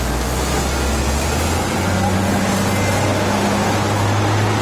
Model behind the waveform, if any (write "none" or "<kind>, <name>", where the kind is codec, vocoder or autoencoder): none